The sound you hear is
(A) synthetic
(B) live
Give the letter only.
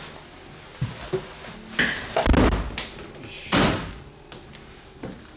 B